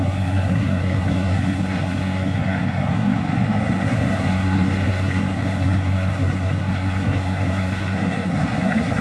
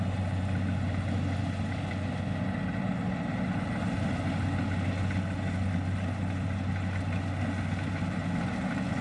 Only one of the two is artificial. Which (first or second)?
first